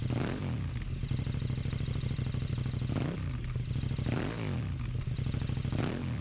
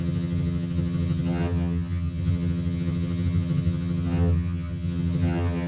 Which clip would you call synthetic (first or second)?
second